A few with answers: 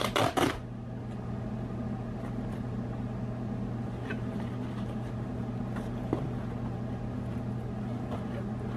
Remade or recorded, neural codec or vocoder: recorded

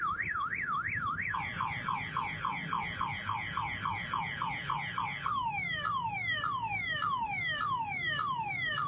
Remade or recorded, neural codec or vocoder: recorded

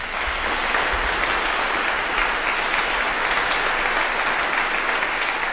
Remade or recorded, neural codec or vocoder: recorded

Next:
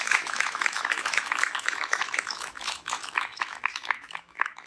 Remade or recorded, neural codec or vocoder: remade, autoencoder, DAC-VAE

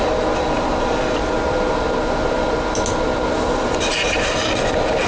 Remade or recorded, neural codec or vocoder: recorded